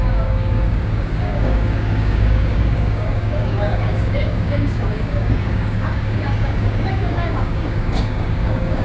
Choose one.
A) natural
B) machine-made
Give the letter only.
B